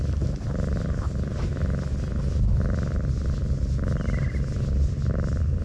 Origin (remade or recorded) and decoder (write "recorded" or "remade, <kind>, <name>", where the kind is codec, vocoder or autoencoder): recorded